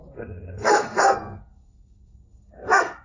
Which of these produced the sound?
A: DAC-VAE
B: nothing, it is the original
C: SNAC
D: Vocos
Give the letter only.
C